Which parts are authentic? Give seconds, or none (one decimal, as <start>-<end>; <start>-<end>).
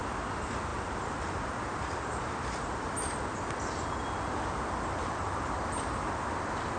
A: 0.0-6.8